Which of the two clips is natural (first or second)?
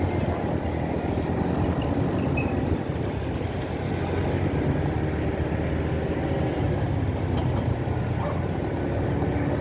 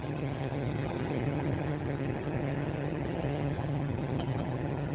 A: first